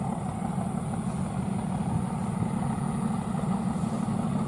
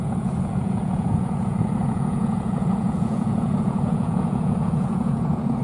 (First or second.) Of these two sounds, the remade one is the second